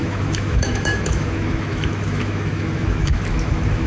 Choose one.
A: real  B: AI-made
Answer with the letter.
B